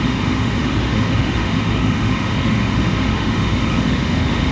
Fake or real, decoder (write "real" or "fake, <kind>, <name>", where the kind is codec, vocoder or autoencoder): fake, autoencoder, DAC-VAE